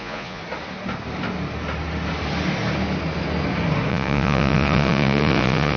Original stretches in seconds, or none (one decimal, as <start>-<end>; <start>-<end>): 0.4-3.9